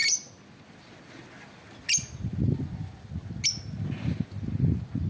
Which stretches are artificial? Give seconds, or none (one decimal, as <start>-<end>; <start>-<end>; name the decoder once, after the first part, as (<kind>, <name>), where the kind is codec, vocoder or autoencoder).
none